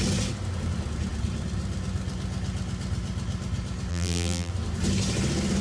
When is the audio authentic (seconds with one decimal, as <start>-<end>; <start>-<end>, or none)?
0.0-3.9; 4.5-5.6